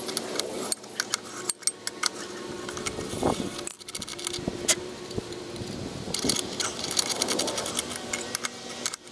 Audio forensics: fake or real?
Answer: real